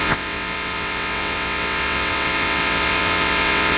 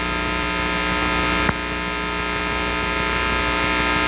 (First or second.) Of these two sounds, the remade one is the first